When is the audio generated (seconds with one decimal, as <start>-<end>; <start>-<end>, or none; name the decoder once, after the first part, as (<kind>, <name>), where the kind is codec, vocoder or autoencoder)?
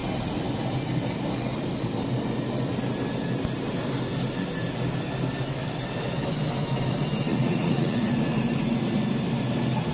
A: 7.3-8.1 (vocoder, Vocos)